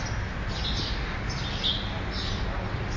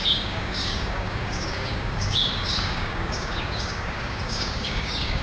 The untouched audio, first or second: first